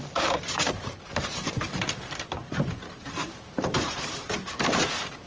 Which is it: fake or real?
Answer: fake